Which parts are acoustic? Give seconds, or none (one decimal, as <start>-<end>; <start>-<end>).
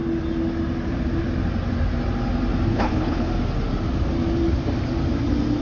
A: 0.0-2.7; 3.3-5.6